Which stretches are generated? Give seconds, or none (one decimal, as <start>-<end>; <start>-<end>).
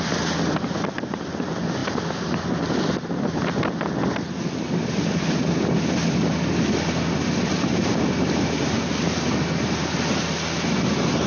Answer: none